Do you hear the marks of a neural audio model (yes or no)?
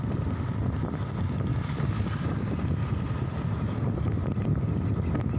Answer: no